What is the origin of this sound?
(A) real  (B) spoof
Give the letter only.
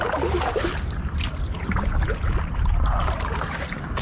A